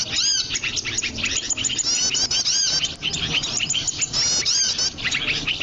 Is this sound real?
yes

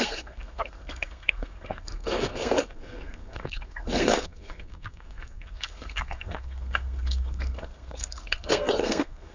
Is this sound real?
no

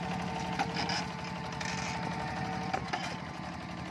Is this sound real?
yes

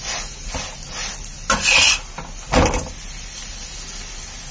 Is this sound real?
yes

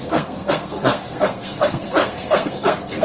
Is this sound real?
no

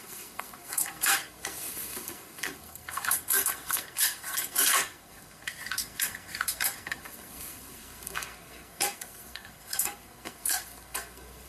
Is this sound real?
no